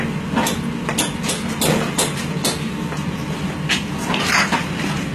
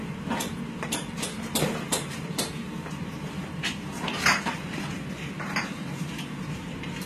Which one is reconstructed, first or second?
second